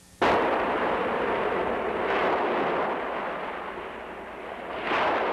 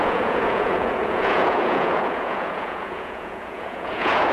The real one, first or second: first